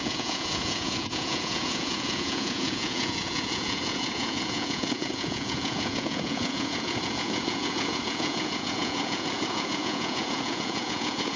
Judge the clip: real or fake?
fake